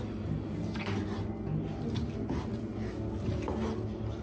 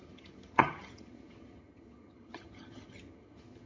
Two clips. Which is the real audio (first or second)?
first